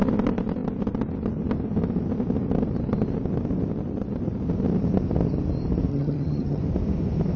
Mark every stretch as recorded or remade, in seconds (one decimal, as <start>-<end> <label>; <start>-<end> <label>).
0.0-5.9 recorded; 5.9-6.6 remade; 6.6-7.4 recorded